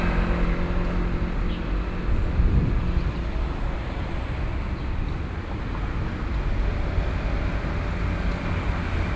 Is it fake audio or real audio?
real